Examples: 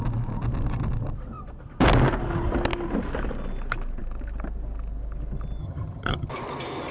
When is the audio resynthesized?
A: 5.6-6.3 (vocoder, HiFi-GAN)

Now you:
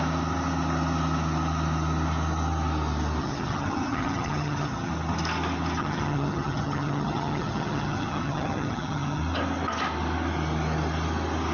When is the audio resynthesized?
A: 3.2-4.9 (vocoder, HiFi-GAN); 5.8-9.2

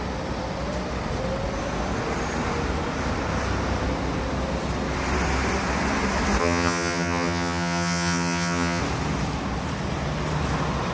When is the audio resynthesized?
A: 6.4-8.8 (vocoder, HiFi-GAN)